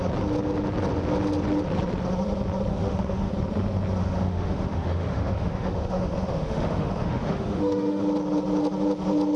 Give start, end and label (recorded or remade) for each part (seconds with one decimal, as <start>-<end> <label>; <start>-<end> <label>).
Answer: 0.0-2.7 recorded; 2.7-3.3 remade; 3.3-4.0 recorded; 4.0-8.0 remade; 8.0-9.4 recorded